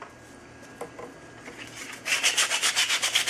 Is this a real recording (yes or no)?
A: yes